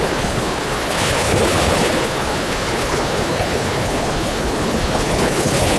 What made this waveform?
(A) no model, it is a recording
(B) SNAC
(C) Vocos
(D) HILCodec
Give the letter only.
D